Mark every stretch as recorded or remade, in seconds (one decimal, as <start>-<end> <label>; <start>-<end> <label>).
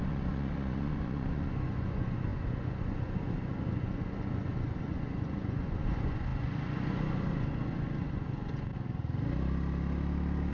0.0-8.7 remade; 8.7-10.5 recorded